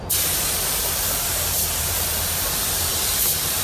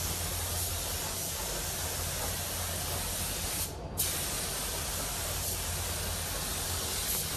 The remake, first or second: first